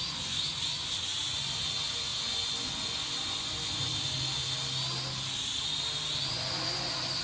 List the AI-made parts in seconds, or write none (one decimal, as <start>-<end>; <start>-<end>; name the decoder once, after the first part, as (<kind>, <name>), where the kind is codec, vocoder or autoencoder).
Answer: 0.0-3.9 (vocoder, Vocos); 6.3-7.2